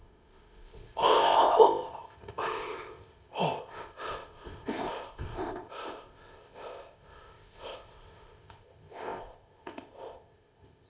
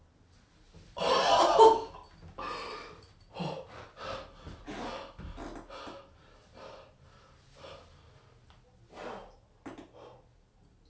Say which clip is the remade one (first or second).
first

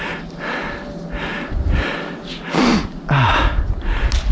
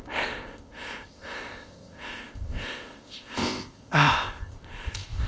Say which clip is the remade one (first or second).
second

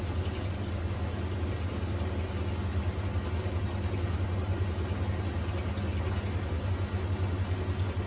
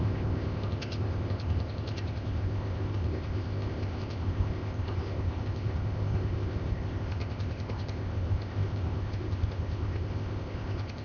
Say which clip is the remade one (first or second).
second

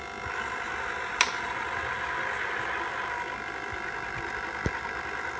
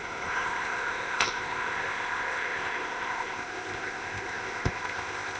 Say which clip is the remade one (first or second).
second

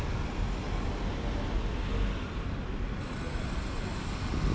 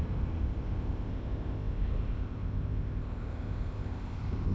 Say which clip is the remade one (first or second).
second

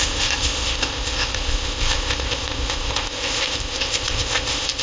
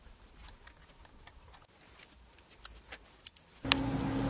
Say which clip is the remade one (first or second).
first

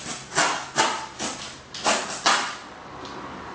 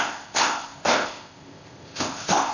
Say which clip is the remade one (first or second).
second